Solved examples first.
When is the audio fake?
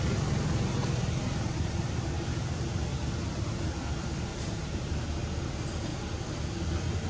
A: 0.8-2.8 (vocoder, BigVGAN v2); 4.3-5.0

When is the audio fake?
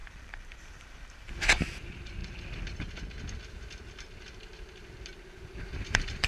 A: 0.0-2.2 (vocoder, BigVGAN v2); 5.8-6.3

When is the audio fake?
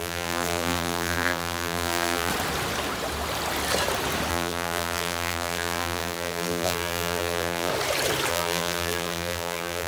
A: 0.0-2.3 (vocoder, BigVGAN v2); 4.3-7.7; 8.3-9.9